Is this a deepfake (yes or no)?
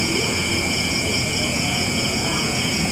yes